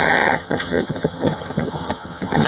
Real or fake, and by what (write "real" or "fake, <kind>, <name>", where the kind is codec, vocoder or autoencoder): fake, vocoder, HiFi-GAN